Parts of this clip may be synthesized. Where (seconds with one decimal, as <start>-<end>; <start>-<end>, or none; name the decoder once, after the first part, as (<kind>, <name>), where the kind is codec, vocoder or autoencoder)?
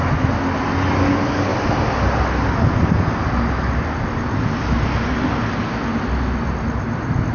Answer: none